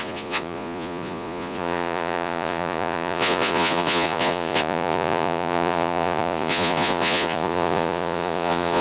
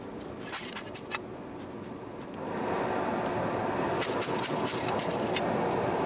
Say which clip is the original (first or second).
second